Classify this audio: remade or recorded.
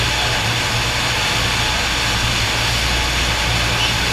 recorded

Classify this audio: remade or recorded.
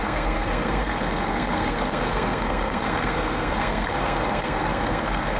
remade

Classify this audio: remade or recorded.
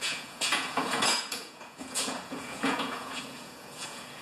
remade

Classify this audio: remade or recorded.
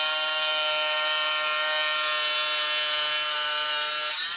recorded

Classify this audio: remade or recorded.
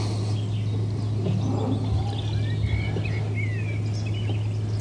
recorded